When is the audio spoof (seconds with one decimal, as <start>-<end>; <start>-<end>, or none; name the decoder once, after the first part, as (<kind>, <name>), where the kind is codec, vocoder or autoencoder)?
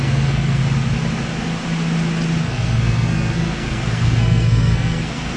0.0-0.6 (codec, SNAC); 2.4-5.4